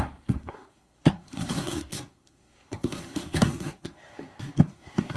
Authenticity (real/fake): fake